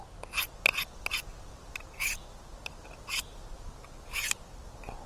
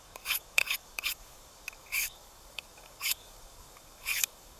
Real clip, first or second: first